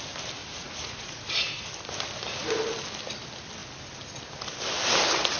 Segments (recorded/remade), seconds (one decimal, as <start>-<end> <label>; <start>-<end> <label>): 0.0-0.4 recorded; 0.4-1.7 remade; 1.7-5.4 recorded